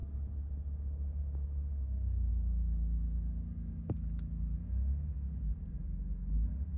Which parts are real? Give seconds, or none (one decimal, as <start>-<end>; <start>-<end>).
0.0-6.8